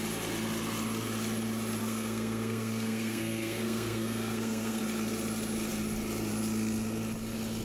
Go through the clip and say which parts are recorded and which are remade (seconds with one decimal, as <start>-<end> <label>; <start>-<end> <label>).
0.0-1.8 recorded; 1.8-4.8 remade; 4.8-7.6 recorded

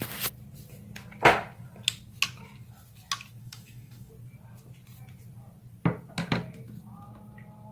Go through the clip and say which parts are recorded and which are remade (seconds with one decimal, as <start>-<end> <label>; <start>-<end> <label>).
0.0-3.4 recorded; 3.4-4.1 remade; 4.1-7.7 recorded

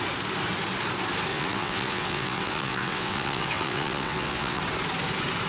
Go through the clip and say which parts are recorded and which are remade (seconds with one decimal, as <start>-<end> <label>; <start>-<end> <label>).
0.0-1.3 recorded; 1.3-4.6 remade; 4.6-5.5 recorded

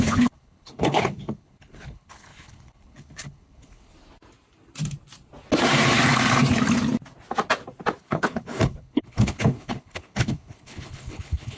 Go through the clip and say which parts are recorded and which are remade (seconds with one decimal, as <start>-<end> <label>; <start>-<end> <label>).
0.0-3.9 remade; 3.9-8.0 recorded; 8.0-11.6 remade

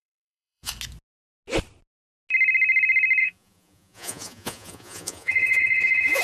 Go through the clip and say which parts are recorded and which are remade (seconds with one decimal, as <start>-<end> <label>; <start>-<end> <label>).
0.0-0.7 remade; 0.7-3.2 recorded; 3.2-6.2 remade